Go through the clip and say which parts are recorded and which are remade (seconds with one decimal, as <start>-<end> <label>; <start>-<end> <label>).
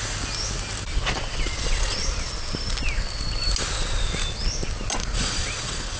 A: 0.0-0.9 recorded; 0.9-2.3 remade; 2.3-5.0 recorded; 5.0-6.0 remade